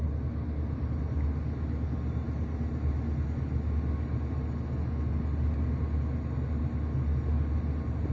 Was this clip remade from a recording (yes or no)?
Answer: no